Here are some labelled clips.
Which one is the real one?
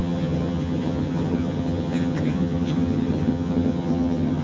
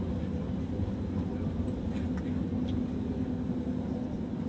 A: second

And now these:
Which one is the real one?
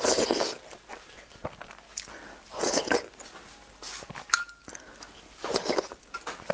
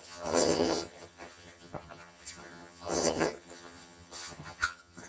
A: first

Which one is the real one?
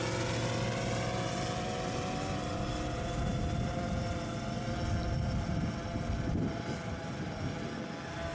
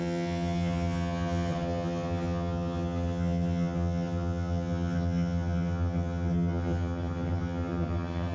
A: first